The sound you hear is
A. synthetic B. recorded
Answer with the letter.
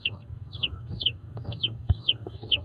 A